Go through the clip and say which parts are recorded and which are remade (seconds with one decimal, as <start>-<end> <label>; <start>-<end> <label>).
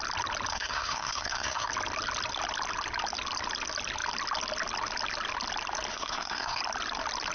0.0-0.5 recorded; 0.5-1.7 remade; 1.7-5.9 recorded; 5.9-6.6 remade; 6.6-7.3 recorded